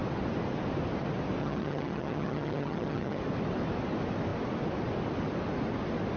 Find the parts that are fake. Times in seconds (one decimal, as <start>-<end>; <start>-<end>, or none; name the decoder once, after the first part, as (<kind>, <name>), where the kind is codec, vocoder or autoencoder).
1.4-3.2 (vocoder, HiFi-GAN)